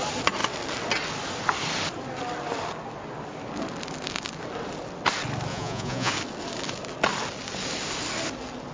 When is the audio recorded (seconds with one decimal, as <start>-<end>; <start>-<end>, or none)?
0.0-5.5; 6.1-8.7